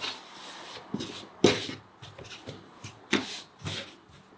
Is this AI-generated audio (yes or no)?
no